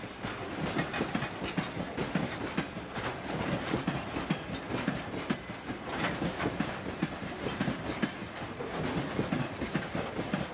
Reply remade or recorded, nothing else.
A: recorded